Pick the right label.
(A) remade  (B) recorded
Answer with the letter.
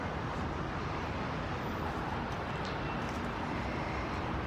B